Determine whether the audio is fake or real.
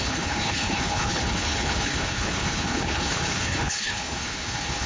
fake